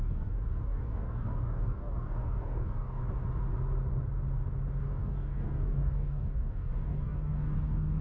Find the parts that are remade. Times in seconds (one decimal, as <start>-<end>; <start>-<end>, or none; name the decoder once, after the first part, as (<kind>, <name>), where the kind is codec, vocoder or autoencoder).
0.0-3.0 (codec, DAC); 4.8-8.0